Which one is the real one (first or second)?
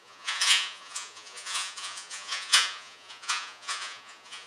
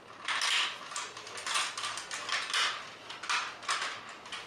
second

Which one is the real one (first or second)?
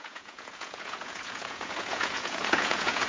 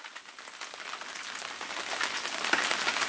second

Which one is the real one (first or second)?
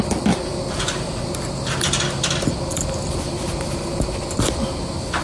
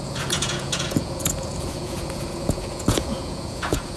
first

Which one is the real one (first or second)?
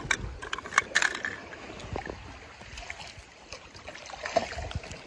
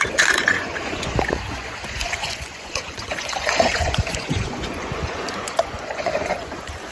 first